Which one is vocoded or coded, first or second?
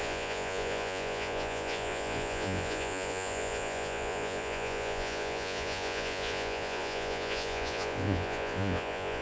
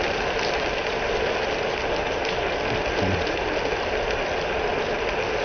first